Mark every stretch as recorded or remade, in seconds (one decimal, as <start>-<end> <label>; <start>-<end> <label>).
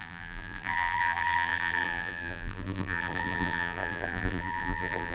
0.0-5.1 remade